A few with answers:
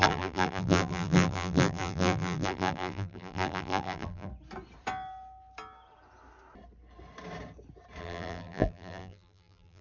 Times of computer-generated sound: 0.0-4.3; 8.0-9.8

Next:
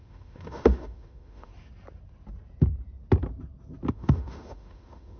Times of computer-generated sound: 0.0-1.5; 3.9-5.2

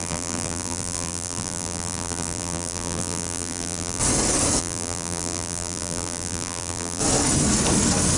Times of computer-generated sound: 0.0-4.0; 4.6-7.0

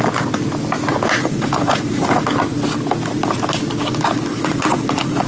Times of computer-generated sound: 1.2-2.2; 4.3-5.3

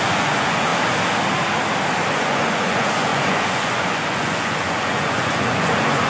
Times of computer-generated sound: 0.0-0.7; 2.1-6.1

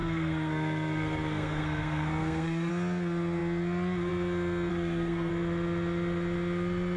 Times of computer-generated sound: 0.0-2.7; 4.7-5.3

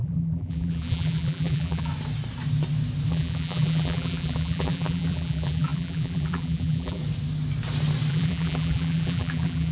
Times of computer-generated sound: 0.0-1.9; 3.1-7.0; 8.1-9.7